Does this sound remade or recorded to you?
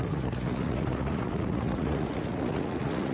remade